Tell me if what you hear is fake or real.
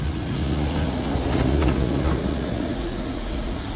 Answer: fake